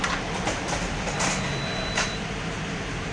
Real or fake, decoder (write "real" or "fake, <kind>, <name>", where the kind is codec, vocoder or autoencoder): fake, vocoder, BigVGAN v2